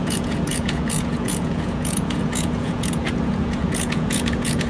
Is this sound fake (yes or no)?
yes